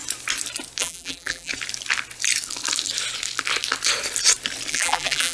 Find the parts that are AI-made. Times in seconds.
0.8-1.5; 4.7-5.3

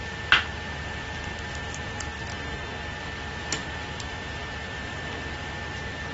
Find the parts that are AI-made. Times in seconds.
0.5-1.6; 3.6-4.8

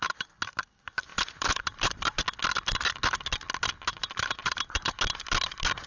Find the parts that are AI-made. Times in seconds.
1.1-2.2; 3.9-5.0

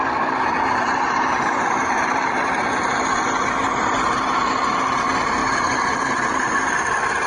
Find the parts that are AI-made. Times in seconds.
0.6-3.0; 3.6-4.7; 5.4-6.4

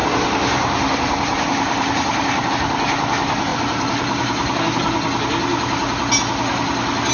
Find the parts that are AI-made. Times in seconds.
0.0-2.5; 3.5-4.6

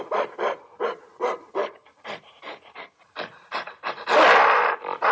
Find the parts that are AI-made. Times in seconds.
1.6-3.9

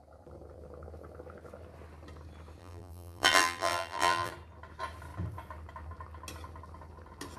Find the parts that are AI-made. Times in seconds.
2.6-4.3

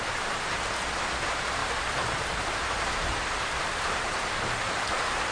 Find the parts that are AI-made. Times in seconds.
1.6-4.8